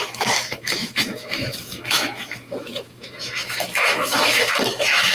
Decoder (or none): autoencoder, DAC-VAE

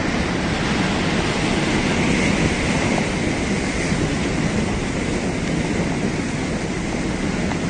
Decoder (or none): none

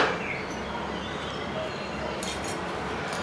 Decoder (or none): vocoder, BigVGAN v2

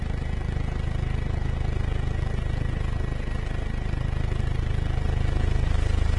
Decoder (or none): none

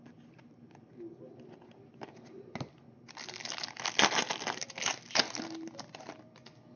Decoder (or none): none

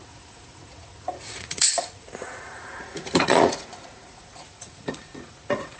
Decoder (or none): vocoder, Vocos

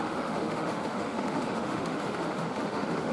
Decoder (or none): autoencoder, DAC-VAE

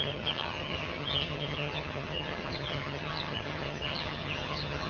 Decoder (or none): vocoder, HiFi-GAN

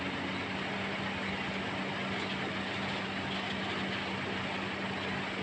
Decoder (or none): none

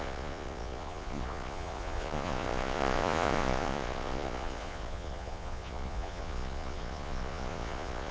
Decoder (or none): vocoder, Vocos